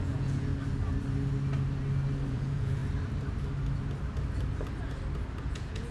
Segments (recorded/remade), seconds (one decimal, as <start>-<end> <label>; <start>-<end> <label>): 0.0-0.5 remade; 0.5-2.3 recorded; 2.3-2.8 remade; 2.8-5.4 recorded; 5.4-5.9 remade